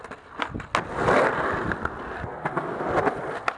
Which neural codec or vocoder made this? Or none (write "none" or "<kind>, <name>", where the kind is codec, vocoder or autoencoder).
none